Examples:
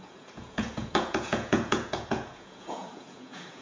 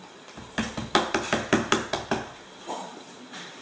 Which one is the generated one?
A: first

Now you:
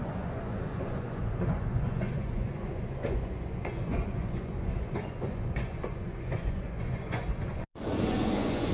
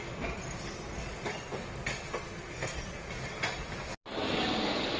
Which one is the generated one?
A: first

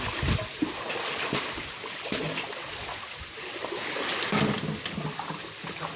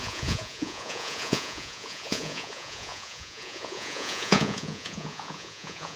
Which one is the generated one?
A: second